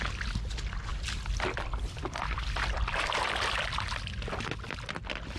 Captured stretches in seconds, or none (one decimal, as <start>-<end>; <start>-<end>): 0.0-5.4